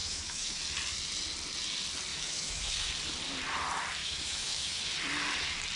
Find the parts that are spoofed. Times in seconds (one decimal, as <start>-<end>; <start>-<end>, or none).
0.0-0.6; 2.1-2.9; 4.0-4.8